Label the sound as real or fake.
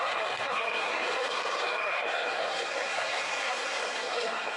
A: fake